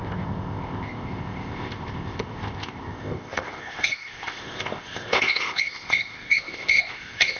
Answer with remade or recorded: remade